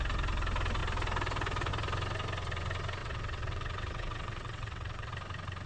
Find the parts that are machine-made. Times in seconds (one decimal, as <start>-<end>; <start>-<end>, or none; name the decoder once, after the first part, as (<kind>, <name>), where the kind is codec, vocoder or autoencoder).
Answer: 3.0-5.1 (vocoder, WaveNeXt)